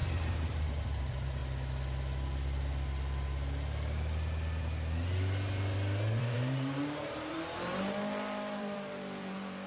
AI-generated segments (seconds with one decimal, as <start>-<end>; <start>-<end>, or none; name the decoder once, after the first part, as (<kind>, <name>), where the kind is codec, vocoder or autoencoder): 0.0-1.4 (vocoder, BigVGAN v2); 6.2-9.7